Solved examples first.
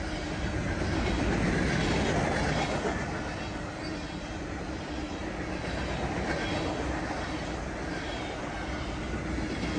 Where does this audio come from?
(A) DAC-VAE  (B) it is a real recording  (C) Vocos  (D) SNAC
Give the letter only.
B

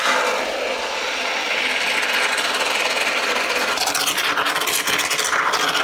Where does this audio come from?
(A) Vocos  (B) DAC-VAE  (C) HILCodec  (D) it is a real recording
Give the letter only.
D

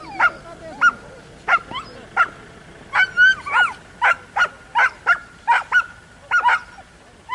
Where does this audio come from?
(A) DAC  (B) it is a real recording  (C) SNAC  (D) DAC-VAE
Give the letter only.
B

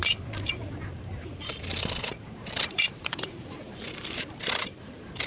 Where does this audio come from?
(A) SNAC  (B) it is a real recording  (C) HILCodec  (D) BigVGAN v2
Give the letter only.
D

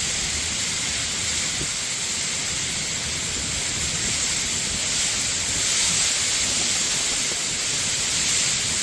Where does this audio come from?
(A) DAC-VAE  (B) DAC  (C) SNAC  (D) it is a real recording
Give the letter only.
D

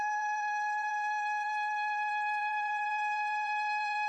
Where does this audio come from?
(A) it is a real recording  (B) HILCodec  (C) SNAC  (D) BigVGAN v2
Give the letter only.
D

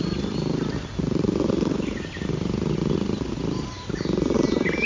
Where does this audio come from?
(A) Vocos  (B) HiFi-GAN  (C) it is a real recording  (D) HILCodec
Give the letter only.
C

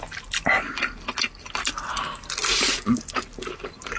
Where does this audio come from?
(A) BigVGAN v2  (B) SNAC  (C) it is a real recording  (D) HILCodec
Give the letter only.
C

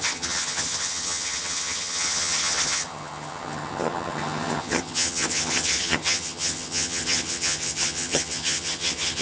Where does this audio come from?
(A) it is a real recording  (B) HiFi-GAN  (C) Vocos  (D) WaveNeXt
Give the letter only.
B